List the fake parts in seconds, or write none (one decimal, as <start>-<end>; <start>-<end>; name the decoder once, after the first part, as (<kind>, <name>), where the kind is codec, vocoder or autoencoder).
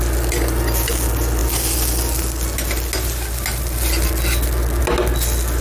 none